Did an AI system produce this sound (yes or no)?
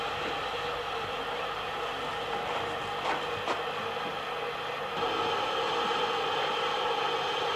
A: no